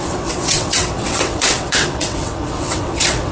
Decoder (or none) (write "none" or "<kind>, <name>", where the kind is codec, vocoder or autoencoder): vocoder, WaveNeXt